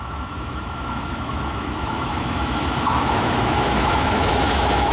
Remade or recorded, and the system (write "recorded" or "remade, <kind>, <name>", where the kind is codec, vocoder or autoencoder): remade, autoencoder, DAC-VAE